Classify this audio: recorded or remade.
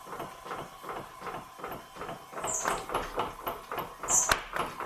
recorded